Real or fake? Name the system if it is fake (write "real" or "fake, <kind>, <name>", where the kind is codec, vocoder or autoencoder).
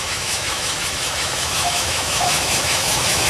fake, autoencoder, DAC-VAE